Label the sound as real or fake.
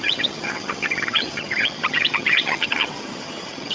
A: fake